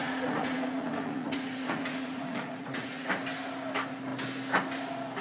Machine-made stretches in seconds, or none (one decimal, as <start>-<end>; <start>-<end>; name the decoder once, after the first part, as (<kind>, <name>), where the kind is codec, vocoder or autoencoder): 0.0-3.1 (vocoder, Vocos)